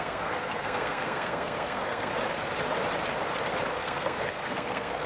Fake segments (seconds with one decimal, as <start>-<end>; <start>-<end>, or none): 0.0-2.1; 3.7-5.1